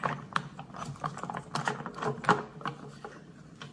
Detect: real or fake real